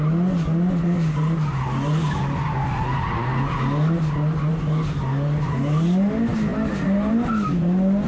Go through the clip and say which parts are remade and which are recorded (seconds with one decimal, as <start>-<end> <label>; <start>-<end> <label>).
0.0-8.1 recorded